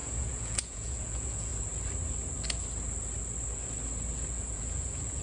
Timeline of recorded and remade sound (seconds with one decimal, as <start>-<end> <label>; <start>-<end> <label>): 0.0-1.5 remade; 1.5-4.3 recorded; 4.3-5.2 remade